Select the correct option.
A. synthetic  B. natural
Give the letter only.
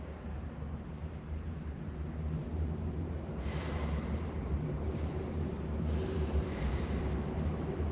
A